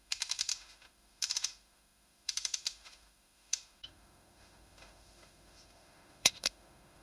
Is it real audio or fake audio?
fake